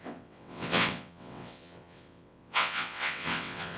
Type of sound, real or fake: fake